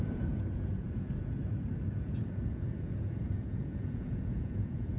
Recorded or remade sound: remade